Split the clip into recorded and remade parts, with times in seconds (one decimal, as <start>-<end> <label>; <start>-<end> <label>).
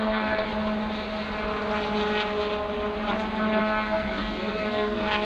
0.0-0.5 remade; 0.5-3.6 recorded; 3.6-5.2 remade